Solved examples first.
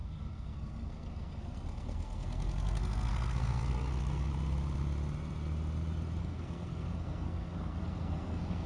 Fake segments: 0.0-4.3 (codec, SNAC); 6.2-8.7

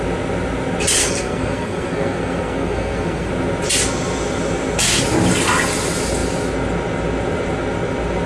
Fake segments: 1.0-3.3 (codec, SNAC)

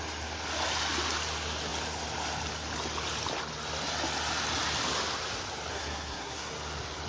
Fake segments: 5.7-6.5 (codec, SNAC)

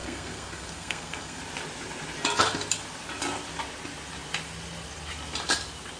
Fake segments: 0.0-1.4 (codec, SNAC)

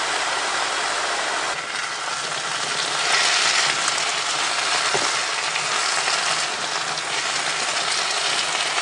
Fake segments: none

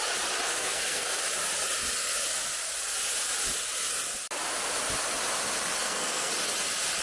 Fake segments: 0.5-1.2 (codec, SNAC); 5.8-6.3

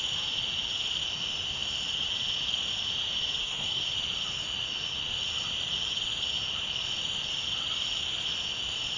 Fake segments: 3.4-3.9 (codec, SNAC)